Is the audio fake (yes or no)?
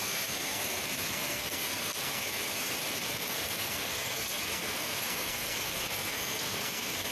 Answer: yes